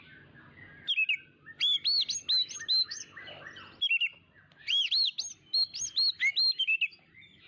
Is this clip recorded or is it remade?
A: recorded